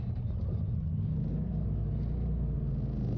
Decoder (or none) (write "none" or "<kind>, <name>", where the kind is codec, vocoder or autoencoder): none